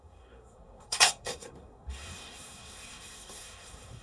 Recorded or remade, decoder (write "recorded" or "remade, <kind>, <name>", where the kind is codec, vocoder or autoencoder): remade, codec, SNAC